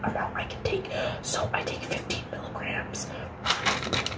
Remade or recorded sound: remade